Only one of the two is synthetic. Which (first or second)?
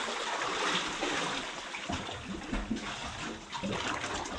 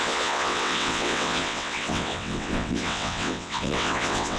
second